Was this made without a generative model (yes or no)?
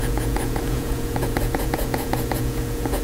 no